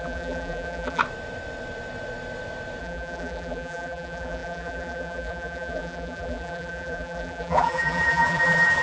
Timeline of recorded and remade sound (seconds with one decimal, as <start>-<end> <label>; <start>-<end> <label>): 0.0-1.0 remade; 1.0-2.8 recorded; 2.8-8.8 remade